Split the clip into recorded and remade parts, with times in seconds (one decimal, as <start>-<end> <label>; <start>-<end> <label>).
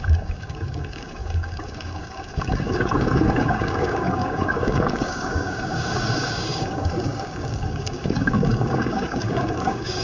0.0-10.0 remade